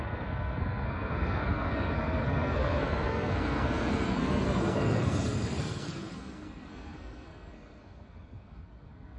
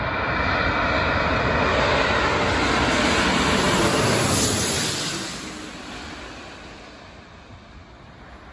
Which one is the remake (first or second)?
first